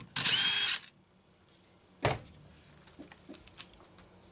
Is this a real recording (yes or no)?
yes